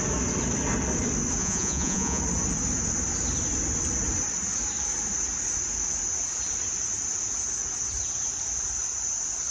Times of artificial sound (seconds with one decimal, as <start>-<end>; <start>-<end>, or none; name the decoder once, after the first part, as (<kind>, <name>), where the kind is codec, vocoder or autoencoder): 1.4-2.2 (vocoder, Vocos)